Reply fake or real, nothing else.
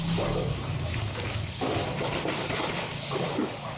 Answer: real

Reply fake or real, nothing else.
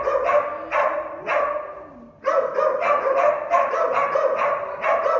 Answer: real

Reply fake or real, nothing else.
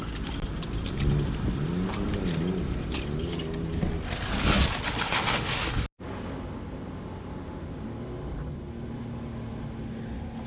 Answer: real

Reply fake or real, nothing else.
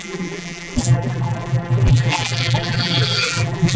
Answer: fake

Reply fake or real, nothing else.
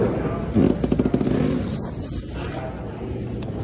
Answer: real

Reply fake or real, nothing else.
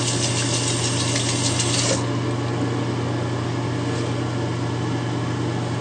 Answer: real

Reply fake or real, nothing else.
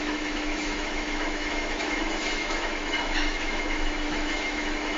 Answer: fake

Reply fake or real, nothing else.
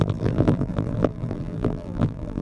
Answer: fake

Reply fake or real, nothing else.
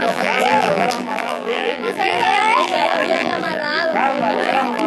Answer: fake